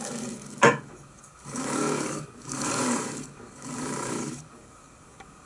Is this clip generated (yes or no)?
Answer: yes